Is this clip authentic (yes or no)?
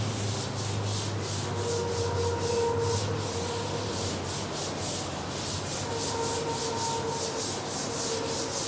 yes